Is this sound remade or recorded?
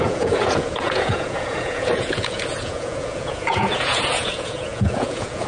remade